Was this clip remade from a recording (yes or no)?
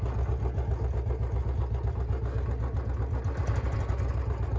no